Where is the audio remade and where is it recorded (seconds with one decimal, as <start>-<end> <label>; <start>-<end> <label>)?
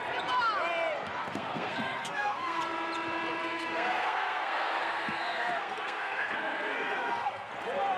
0.0-1.2 recorded; 1.2-2.6 remade; 2.6-3.4 recorded; 3.4-7.5 remade; 7.5-8.0 recorded